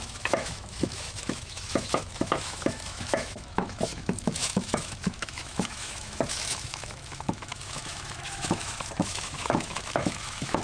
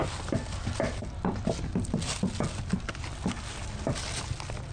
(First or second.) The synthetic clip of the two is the first